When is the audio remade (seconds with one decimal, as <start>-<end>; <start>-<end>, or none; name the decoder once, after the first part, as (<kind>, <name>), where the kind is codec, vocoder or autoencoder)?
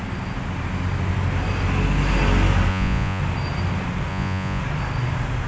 2.7-3.2 (vocoder, Vocos); 4.1-4.6